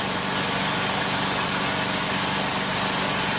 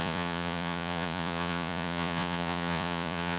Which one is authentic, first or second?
first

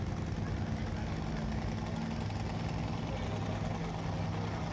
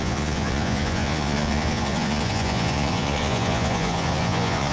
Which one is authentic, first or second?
first